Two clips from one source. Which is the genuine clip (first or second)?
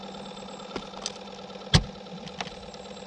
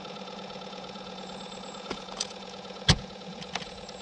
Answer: first